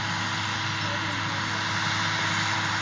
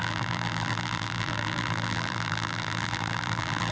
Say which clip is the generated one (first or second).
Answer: second